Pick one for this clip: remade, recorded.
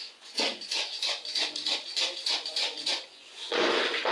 remade